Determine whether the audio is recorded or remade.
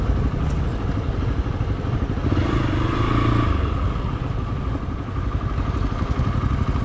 recorded